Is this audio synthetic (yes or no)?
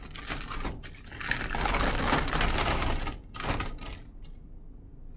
no